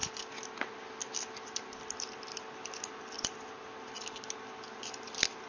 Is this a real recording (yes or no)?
yes